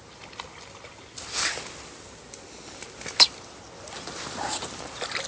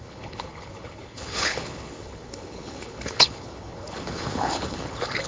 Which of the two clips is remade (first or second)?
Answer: second